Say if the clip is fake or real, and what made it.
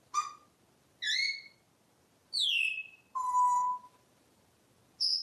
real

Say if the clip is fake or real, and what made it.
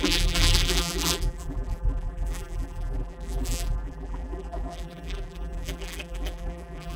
fake, vocoder, BigVGAN v2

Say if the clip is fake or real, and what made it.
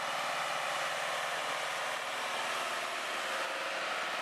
real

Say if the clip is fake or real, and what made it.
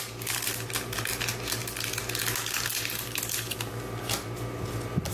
real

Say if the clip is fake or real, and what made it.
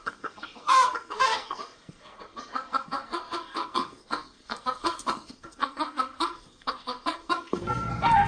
fake, codec, SNAC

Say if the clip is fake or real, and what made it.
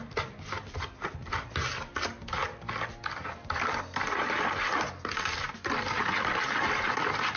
real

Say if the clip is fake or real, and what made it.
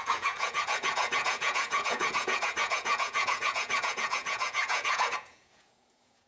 fake, vocoder, Vocos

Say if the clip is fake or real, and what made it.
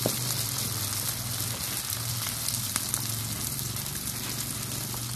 real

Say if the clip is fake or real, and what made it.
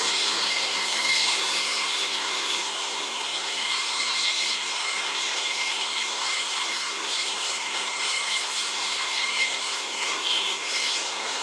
fake, codec, SNAC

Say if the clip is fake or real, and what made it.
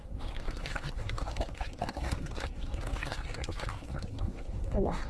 fake, codec, SNAC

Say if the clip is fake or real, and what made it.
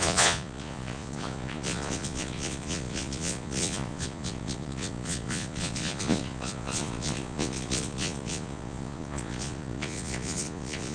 fake, vocoder, Vocos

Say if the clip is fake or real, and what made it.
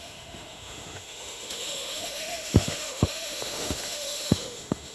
fake, autoencoder, DAC-VAE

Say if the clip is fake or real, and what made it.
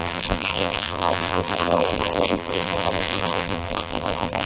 fake, vocoder, BigVGAN v2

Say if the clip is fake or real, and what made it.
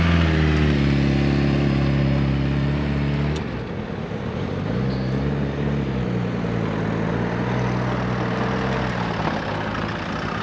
real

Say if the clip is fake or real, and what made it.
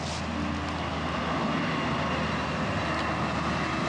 real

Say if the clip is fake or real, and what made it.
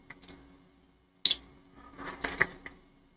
real